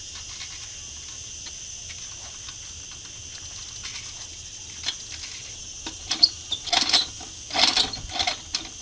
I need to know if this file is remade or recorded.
recorded